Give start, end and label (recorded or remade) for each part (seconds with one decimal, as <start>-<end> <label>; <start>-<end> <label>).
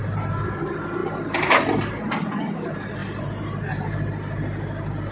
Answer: 0.0-5.1 recorded